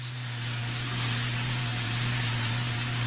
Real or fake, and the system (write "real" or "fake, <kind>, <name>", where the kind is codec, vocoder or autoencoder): fake, vocoder, BigVGAN v2